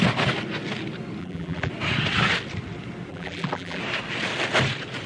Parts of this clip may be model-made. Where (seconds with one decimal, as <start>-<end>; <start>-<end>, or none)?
1.2-1.7; 3.1-3.8